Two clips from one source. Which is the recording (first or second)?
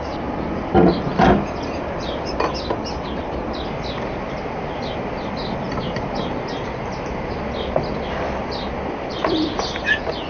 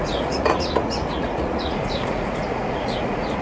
first